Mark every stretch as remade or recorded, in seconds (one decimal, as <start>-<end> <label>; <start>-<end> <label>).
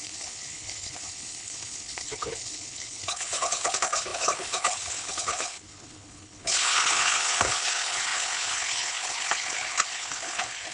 0.0-10.7 remade